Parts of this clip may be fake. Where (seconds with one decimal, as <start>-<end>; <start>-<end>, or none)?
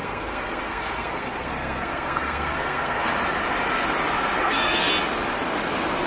0.0-3.1; 4.4-4.9